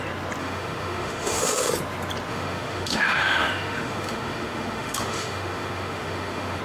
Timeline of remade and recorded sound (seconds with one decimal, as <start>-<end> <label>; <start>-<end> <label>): 0.0-0.4 recorded; 0.4-1.7 remade; 1.7-2.3 recorded; 2.3-6.6 remade

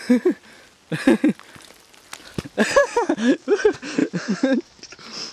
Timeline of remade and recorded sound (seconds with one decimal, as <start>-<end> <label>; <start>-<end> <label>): 0.0-2.8 recorded; 2.8-3.4 remade; 3.4-4.0 recorded; 4.0-4.7 remade; 4.7-5.3 recorded

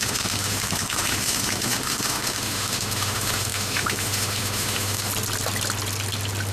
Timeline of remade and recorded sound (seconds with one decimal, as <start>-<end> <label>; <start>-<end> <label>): 0.0-5.1 remade; 5.1-6.5 recorded